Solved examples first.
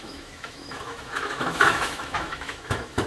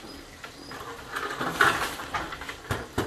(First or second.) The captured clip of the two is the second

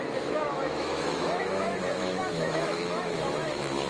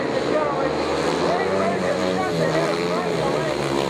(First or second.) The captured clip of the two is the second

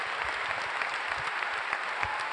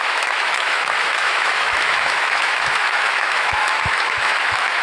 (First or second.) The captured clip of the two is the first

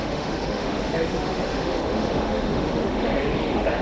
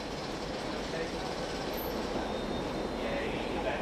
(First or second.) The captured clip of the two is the second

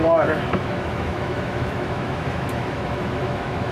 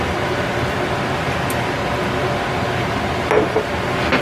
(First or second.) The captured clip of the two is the second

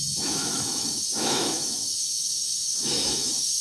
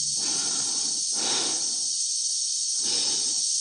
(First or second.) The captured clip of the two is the second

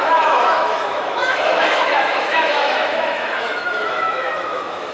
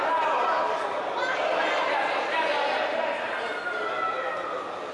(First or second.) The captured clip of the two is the second